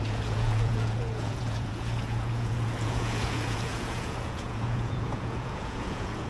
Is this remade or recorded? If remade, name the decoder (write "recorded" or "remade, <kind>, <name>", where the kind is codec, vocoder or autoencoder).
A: remade, vocoder, Vocos